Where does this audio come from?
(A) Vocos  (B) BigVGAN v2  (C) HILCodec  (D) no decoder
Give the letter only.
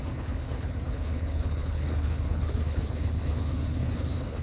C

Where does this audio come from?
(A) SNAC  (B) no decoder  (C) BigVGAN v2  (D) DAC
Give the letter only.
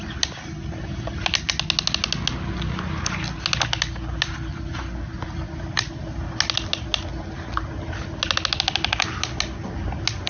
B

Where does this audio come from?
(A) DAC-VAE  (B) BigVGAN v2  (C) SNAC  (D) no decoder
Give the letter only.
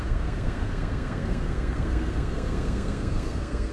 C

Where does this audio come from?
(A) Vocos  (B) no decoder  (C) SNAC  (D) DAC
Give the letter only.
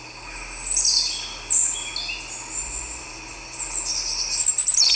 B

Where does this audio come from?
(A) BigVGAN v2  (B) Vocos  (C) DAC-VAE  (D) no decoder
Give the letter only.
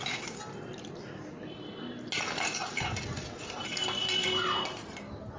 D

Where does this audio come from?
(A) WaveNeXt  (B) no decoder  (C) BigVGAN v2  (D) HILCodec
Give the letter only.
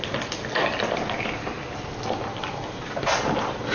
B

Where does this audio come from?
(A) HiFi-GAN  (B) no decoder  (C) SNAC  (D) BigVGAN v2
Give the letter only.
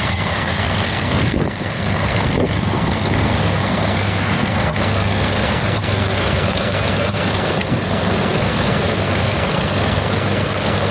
C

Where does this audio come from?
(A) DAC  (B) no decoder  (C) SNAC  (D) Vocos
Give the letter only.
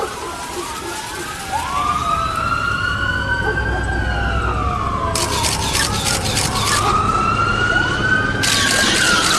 B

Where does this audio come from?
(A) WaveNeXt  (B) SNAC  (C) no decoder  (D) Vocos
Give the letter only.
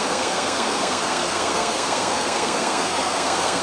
B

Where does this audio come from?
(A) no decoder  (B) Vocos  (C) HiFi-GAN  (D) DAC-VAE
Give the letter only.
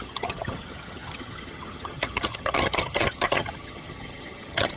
C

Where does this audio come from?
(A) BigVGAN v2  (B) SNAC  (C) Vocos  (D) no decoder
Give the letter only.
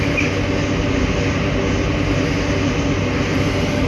D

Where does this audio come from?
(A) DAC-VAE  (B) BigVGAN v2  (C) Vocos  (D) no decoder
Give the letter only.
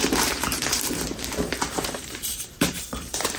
B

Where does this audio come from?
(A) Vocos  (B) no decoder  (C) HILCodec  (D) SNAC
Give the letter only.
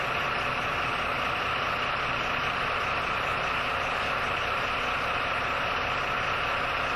B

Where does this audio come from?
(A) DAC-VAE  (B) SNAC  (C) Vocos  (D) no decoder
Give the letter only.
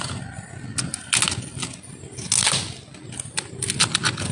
D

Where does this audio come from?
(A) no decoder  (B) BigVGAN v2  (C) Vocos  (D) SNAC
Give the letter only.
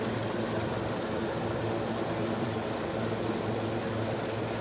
A